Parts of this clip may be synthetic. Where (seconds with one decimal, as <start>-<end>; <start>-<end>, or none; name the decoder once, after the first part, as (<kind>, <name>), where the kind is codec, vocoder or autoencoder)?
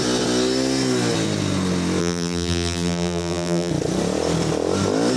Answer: 2.0-3.7 (vocoder, BigVGAN v2)